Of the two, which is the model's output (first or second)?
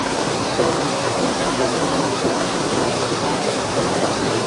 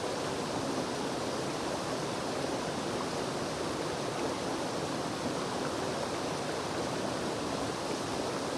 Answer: first